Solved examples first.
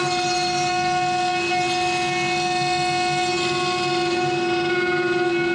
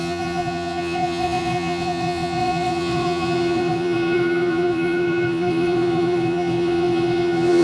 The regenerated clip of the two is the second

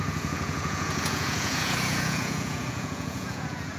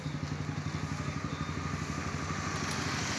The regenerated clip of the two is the first